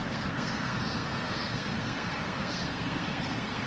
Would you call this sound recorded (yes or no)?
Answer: no